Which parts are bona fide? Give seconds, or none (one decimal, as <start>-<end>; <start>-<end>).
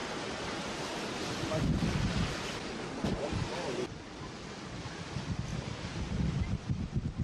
0.6-5.5; 6.0-7.2